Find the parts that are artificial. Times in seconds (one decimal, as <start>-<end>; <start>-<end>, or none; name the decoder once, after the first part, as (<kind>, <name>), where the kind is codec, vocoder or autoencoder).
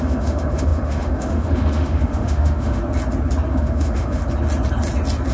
0.0-2.8 (autoencoder, DAC-VAE); 3.5-4.2